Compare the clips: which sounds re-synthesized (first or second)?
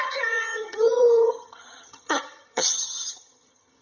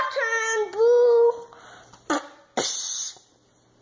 first